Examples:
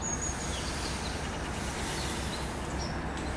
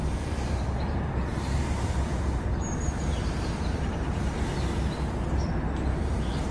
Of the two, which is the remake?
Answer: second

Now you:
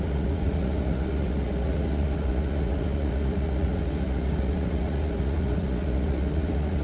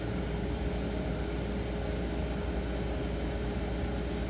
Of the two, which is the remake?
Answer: first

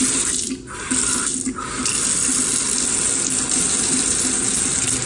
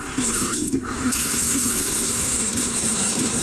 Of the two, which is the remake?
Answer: second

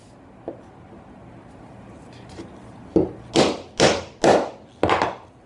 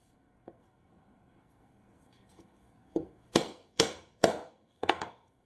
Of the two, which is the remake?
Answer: second